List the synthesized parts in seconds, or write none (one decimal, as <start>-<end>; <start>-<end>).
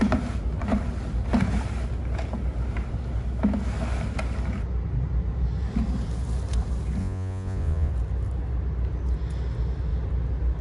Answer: 7.0-7.9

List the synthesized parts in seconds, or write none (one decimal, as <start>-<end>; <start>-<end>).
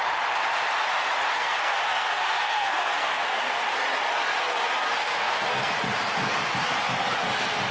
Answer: 1.3-3.4; 5.0-5.7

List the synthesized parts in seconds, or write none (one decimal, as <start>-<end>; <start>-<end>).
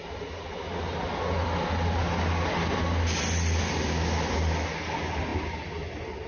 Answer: none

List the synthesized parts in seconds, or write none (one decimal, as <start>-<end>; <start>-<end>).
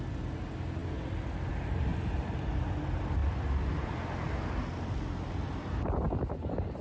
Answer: none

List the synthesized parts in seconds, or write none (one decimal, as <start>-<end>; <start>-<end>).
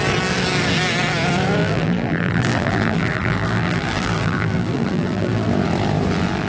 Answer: 1.6-5.5